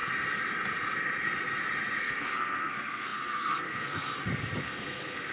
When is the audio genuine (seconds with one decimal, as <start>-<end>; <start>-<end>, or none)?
0.0-2.0; 4.1-4.6